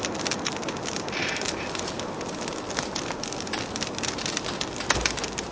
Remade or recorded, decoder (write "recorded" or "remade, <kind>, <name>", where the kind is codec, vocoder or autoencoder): recorded